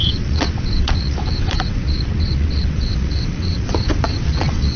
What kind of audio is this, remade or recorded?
remade